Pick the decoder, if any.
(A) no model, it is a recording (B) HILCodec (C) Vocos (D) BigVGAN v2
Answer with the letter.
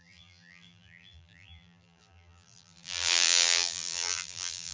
D